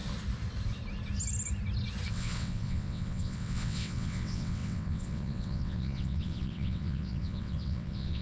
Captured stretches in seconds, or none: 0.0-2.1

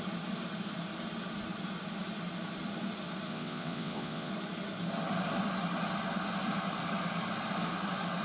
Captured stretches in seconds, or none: 0.0-3.3; 4.3-8.2

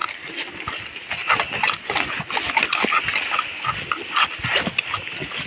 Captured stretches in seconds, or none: 0.0-5.5